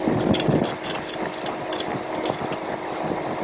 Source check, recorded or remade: recorded